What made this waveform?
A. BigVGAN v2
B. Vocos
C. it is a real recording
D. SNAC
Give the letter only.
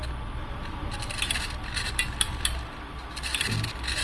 A